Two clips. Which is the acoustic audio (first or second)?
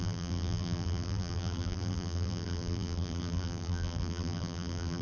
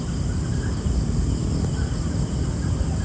second